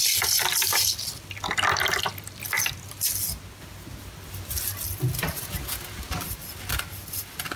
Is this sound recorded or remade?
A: recorded